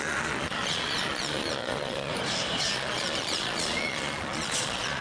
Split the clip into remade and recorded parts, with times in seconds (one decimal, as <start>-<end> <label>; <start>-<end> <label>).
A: 0.0-2.1 remade; 2.1-2.6 recorded; 2.6-5.0 remade